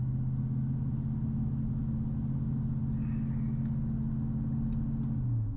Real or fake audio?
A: real